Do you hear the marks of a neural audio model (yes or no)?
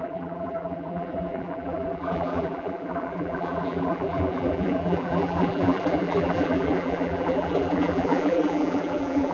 yes